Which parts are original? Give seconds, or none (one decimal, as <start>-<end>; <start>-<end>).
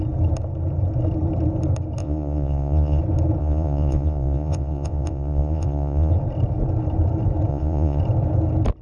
0.0-2.0; 3.0-3.4; 6.1-7.5; 8.0-8.8